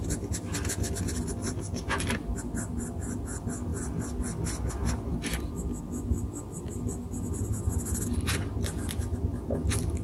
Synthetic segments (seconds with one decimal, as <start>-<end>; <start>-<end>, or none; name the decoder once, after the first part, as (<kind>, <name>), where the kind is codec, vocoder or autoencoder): 1.4-2.8 (vocoder, BigVGAN v2)